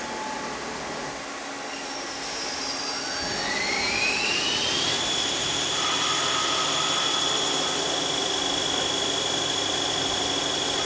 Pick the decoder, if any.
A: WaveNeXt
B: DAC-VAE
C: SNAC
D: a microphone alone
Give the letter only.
D